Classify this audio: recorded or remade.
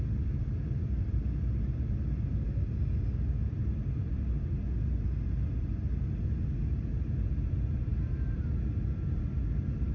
remade